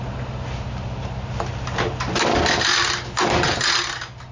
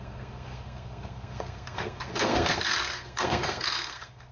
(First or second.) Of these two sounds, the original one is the first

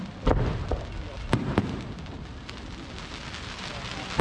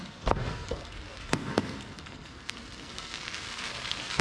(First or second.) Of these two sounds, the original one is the first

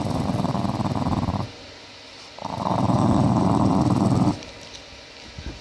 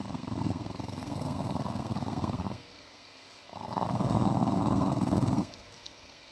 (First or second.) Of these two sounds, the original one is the first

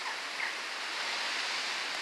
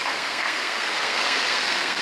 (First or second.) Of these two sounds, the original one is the first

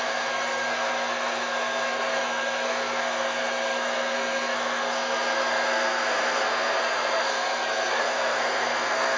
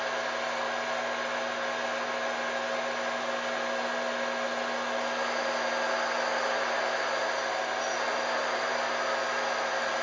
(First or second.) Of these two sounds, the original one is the second